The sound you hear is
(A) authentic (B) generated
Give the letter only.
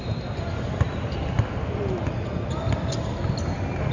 A